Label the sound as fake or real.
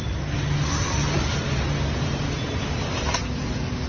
real